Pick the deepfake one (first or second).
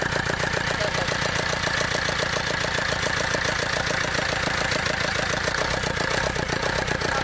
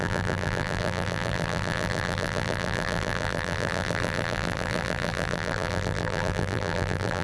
second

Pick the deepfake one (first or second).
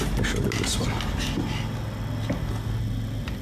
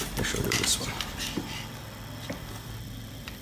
second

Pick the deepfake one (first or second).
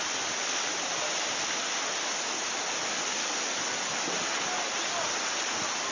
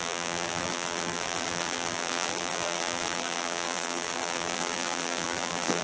second